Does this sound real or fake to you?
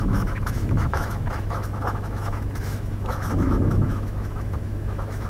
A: fake